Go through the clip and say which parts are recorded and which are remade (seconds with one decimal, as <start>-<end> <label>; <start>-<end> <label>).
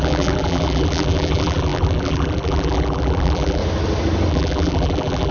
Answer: 0.0-3.6 remade; 3.6-4.3 recorded; 4.3-5.3 remade